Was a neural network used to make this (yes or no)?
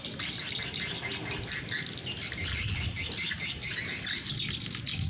no